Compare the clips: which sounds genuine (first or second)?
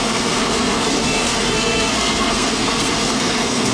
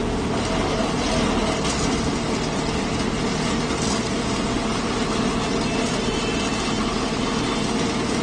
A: second